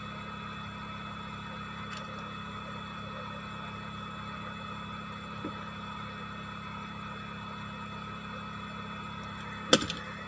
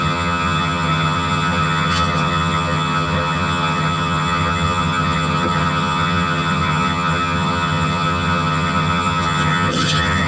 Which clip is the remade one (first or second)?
second